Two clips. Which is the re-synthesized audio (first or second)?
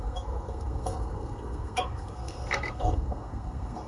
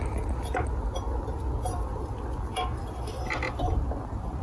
first